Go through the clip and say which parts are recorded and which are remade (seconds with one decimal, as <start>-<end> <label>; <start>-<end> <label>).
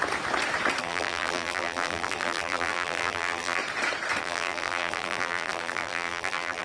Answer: 0.0-0.8 recorded; 0.8-3.6 remade; 3.6-4.2 recorded; 4.2-6.6 remade